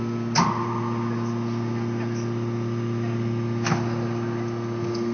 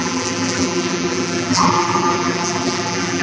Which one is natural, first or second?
first